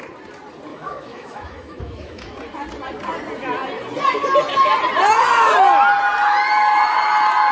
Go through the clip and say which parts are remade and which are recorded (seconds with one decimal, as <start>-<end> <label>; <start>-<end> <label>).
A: 0.0-0.7 recorded; 0.7-2.3 remade; 2.3-7.5 recorded